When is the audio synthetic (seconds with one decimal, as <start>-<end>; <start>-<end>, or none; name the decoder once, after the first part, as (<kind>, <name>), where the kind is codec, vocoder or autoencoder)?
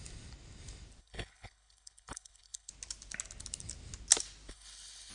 1.0-2.7 (codec, HILCodec); 4.5-5.1